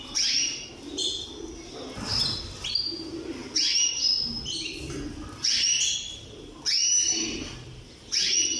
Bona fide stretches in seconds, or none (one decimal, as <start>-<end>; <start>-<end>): 0.0-8.6